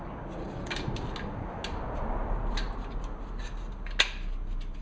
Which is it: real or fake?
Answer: real